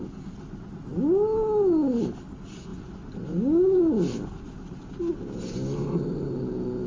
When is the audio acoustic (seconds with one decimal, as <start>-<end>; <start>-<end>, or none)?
0.0-6.9